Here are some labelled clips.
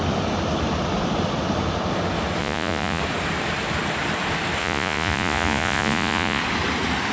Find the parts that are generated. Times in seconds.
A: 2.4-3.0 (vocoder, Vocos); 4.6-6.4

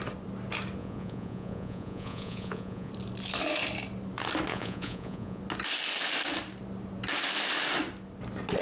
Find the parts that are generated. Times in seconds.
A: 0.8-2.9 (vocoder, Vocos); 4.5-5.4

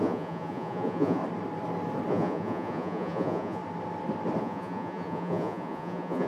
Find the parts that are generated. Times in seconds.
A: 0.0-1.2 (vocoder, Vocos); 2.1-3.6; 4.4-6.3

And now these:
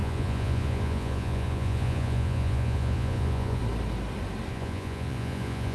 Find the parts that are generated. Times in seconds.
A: 0.0-3.6 (vocoder, Vocos); 4.5-5.7

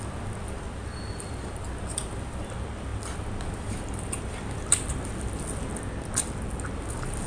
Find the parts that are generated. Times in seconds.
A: none

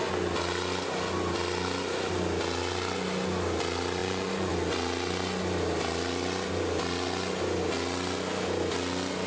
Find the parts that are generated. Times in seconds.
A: 4.0-4.5 (vocoder, Vocos)

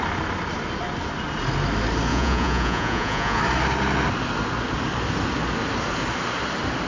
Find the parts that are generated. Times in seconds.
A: 2.1-3.4 (vocoder, Vocos)